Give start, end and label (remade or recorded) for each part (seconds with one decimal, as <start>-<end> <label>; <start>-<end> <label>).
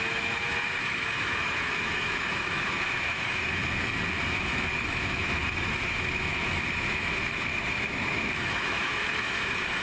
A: 0.0-3.6 remade; 3.6-4.3 recorded; 4.3-9.8 remade